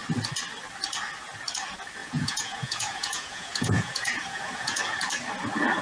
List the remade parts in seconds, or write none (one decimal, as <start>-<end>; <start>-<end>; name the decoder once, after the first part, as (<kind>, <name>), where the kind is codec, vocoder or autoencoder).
2.0-4.8 (vocoder, Vocos)